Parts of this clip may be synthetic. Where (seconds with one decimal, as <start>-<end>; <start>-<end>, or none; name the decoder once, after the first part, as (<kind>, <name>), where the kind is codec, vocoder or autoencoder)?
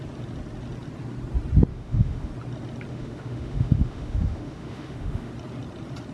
1.7-2.3 (autoencoder, DAC-VAE); 2.9-5.3